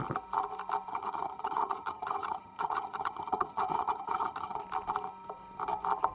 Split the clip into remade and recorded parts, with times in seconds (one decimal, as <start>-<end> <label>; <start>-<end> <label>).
0.0-0.9 recorded; 0.9-4.6 remade; 4.6-6.1 recorded

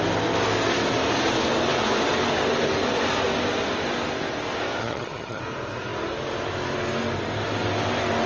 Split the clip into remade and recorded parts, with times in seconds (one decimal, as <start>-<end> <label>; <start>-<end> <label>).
0.0-4.8 recorded; 4.8-5.4 remade; 5.4-8.3 recorded

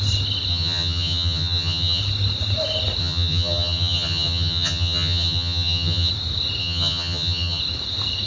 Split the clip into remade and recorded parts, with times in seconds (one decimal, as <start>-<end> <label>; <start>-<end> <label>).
0.0-0.5 recorded; 0.5-2.0 remade; 2.0-3.0 recorded; 3.0-6.1 remade; 6.1-6.6 recorded; 6.6-7.6 remade; 7.6-8.3 recorded

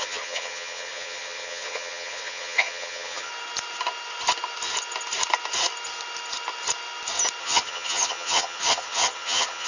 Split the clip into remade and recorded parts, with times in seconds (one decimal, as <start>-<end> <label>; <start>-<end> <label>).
0.0-3.3 remade; 3.3-7.4 recorded; 7.4-9.7 remade

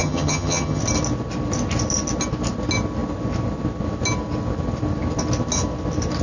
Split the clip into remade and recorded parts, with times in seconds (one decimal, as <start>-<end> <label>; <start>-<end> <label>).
0.0-0.8 remade; 0.8-6.2 recorded

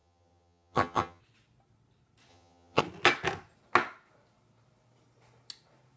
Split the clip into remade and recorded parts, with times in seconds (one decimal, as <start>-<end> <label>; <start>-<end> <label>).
0.0-1.2 remade; 1.2-2.3 recorded; 2.3-2.8 remade; 2.8-6.0 recorded

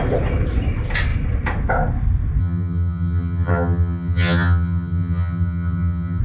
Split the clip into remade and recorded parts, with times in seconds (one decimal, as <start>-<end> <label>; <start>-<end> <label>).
0.0-2.4 recorded; 2.4-6.2 remade

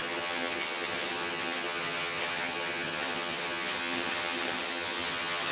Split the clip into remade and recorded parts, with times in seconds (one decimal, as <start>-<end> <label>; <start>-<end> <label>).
0.0-5.5 remade